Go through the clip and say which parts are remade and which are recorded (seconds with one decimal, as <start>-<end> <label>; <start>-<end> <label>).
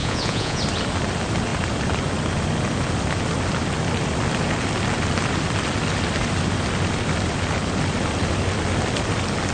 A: 0.0-0.6 remade; 0.6-9.5 recorded